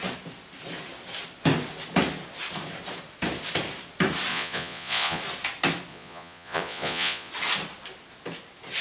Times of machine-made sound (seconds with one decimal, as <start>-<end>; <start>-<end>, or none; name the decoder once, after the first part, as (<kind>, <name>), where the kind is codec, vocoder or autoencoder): 4.3-5.2 (vocoder, Vocos); 5.9-7.3